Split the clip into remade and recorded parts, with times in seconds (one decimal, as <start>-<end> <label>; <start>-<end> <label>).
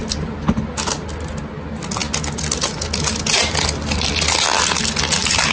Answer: 0.0-5.5 recorded